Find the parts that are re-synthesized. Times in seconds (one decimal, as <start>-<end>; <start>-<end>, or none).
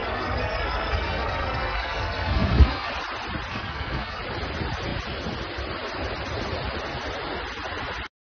0.0-2.9; 3.5-4.2